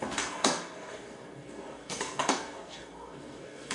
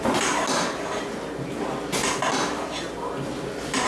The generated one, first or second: first